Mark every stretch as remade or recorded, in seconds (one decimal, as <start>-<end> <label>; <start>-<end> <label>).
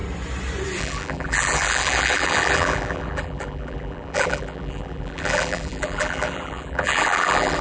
0.0-0.8 recorded; 0.8-7.6 remade